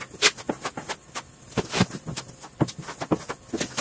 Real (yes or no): yes